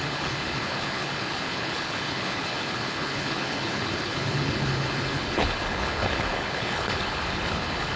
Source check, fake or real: fake